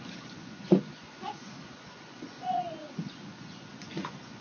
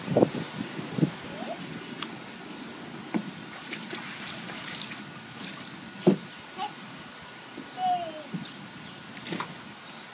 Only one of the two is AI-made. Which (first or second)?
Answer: first